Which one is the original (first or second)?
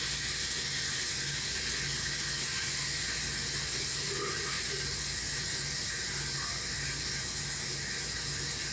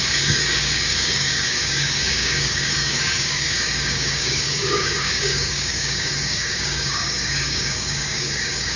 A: first